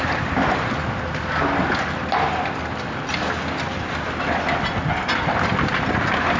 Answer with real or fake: real